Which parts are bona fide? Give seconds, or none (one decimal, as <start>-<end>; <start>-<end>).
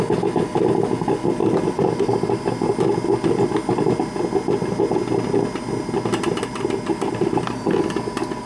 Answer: 0.0-6.1; 7.6-8.5